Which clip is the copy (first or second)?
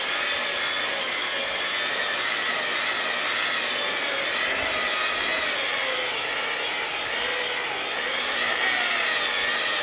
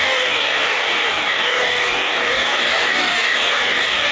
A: second